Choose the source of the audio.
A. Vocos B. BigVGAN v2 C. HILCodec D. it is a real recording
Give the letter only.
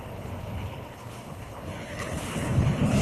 C